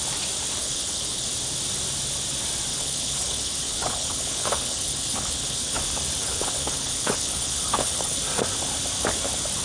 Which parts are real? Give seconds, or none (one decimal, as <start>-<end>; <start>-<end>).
0.0-0.6; 1.3-2.7; 5.8-6.2; 8.2-9.6